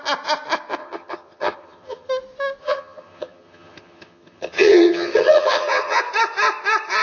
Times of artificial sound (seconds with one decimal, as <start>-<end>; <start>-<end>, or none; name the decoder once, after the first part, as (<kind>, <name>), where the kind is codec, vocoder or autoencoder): 0.8-2.1 (vocoder, HiFi-GAN); 2.6-6.0